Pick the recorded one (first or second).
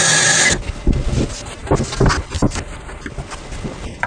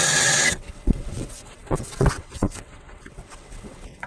first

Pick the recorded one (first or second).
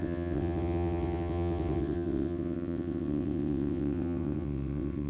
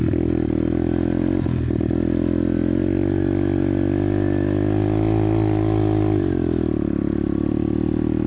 second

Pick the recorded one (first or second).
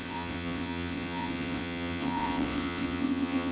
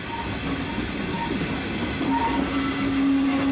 second